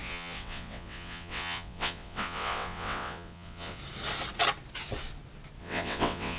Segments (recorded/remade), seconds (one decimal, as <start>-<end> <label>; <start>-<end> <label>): 0.0-3.8 remade; 3.8-5.6 recorded; 5.6-6.4 remade